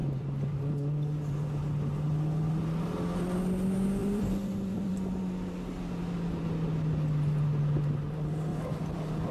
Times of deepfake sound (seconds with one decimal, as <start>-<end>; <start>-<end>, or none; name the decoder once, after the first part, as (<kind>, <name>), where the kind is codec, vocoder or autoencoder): 0.0-0.7 (vocoder, BigVGAN v2); 4.0-5.2; 8.5-9.3